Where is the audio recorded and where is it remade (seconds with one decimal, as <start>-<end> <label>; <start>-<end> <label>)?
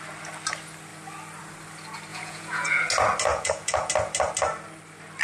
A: 0.0-2.1 recorded; 2.1-2.9 remade; 2.9-3.3 recorded; 3.3-3.9 remade; 3.9-5.2 recorded